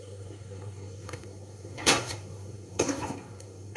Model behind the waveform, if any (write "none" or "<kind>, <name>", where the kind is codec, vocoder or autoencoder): codec, SNAC